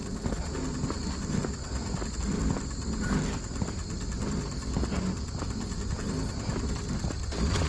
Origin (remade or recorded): recorded